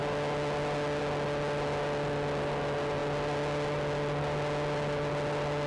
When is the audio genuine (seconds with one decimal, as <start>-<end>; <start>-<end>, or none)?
0.0-5.7